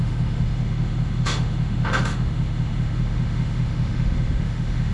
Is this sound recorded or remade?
remade